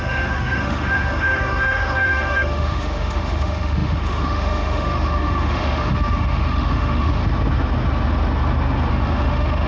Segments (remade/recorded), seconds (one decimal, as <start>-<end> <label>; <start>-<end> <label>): 0.0-7.2 remade; 7.2-8.9 recorded; 8.9-9.7 remade